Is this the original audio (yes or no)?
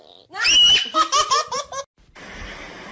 yes